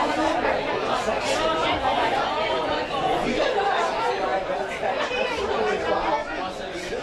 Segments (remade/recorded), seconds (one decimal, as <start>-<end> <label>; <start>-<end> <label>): 0.0-1.6 recorded; 1.6-3.4 remade; 3.4-6.2 recorded; 6.2-7.0 remade